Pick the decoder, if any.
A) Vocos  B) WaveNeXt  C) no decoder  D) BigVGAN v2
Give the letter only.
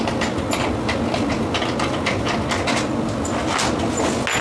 C